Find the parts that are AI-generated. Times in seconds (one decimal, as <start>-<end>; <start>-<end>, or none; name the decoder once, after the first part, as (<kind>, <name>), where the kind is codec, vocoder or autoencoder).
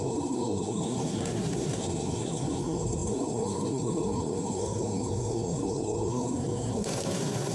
0.0-7.5 (codec, SNAC)